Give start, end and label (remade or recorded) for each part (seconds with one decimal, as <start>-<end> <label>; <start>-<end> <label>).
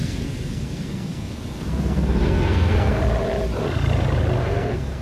0.0-3.0 remade; 3.0-4.4 recorded; 4.4-5.0 remade